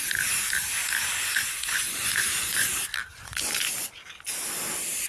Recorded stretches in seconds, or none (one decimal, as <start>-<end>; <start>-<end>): 0.0-1.2; 2.7-3.1; 3.7-5.1